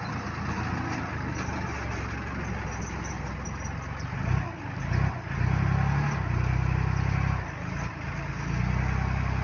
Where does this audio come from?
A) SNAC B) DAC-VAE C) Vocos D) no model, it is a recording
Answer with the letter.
D